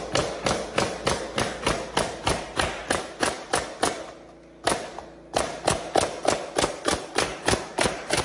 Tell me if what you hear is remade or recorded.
recorded